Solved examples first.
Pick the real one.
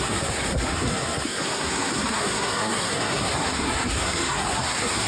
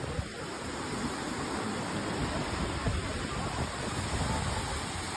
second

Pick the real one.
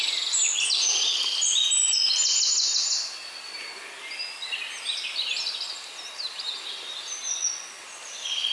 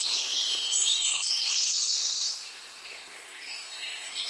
first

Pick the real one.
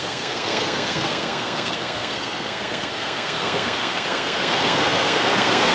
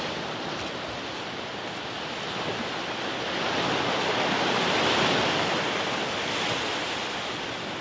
second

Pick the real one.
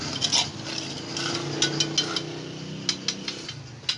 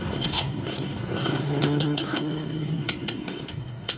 first